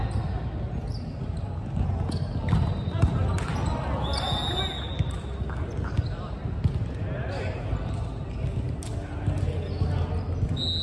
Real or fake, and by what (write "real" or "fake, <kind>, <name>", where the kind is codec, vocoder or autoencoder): real